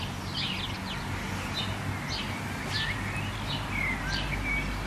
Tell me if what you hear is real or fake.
real